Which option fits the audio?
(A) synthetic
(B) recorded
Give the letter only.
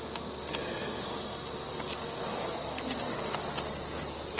B